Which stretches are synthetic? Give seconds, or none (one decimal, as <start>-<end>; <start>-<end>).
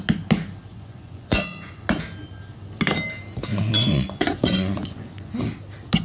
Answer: 0.7-1.8; 3.5-5.3